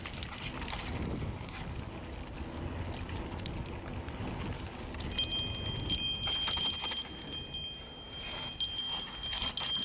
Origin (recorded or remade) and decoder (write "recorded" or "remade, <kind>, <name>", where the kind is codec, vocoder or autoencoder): recorded